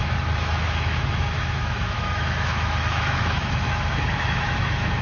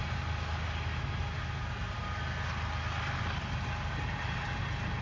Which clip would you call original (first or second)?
second